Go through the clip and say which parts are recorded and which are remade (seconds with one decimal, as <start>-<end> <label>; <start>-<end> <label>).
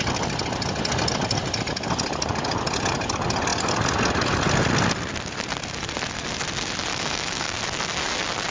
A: 0.0-6.9 recorded; 6.9-7.6 remade; 7.6-8.5 recorded